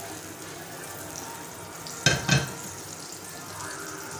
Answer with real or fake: real